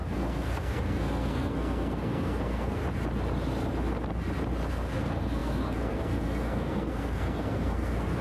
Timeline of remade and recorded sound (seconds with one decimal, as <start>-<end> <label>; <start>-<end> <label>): 0.0-2.8 remade; 2.8-4.7 recorded; 4.7-8.2 remade